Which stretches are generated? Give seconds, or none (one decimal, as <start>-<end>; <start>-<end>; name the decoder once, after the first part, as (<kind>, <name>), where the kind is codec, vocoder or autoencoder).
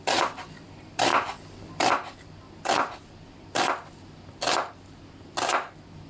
none